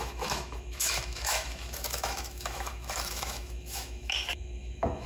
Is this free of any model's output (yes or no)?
no